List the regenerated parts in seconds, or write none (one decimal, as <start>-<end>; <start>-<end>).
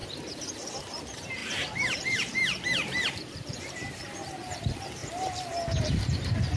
0.7-5.0; 5.8-6.6